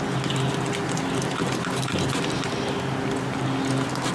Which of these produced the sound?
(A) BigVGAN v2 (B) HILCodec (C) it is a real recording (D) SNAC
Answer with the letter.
C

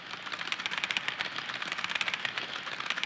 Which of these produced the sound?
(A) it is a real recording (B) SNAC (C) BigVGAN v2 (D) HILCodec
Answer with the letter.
A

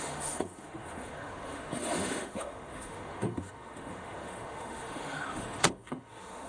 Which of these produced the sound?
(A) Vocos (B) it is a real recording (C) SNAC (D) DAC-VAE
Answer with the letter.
D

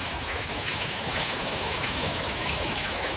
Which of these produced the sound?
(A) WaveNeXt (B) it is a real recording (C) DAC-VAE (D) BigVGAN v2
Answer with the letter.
C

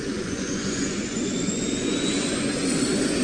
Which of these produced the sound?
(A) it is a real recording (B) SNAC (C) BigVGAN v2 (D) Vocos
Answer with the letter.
D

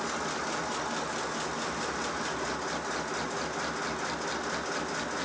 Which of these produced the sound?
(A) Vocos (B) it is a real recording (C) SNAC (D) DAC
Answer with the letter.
B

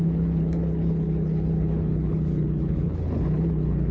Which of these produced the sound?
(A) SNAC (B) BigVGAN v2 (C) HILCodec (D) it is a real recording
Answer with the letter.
C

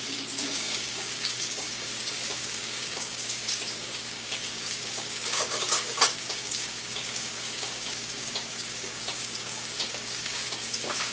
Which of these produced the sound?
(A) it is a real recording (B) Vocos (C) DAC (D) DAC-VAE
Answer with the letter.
C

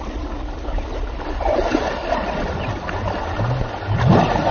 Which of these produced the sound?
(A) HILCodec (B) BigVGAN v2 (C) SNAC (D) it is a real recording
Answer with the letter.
D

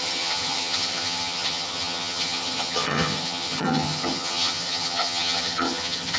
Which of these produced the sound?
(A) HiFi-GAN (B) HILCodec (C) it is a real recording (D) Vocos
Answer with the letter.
A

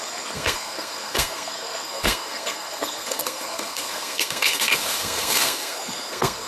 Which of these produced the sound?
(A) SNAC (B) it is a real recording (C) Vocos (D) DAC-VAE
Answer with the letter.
A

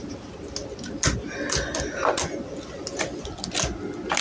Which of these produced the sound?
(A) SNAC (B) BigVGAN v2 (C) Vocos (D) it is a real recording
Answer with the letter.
D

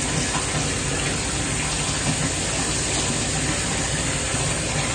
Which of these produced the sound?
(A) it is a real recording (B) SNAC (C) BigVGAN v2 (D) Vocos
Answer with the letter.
A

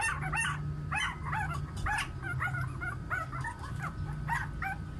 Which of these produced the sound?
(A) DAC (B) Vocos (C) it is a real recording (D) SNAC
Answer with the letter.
C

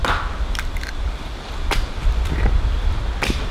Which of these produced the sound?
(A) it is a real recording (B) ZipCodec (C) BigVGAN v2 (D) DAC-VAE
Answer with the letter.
C